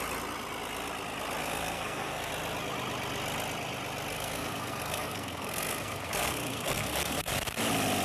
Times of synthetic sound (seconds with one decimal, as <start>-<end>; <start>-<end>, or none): 1.4-2.3; 4.1-7.3